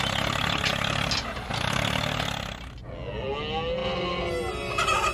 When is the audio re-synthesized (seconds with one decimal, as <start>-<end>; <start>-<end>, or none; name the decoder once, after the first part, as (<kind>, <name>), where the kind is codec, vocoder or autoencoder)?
none